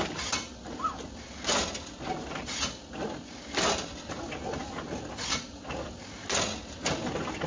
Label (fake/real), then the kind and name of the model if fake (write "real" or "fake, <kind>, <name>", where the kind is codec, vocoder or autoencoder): real